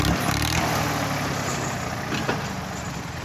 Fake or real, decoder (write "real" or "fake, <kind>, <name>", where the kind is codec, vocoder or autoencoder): real